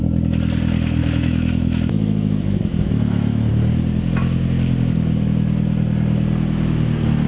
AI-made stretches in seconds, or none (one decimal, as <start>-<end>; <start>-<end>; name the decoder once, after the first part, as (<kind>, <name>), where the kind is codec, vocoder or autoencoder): 1.0-3.5 (autoencoder, DAC-VAE)